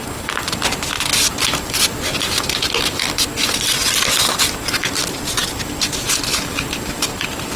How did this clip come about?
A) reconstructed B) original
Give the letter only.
B